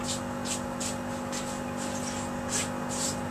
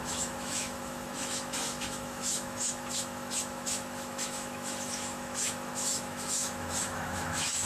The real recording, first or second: first